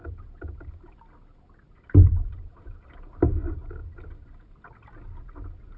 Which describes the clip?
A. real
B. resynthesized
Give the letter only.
B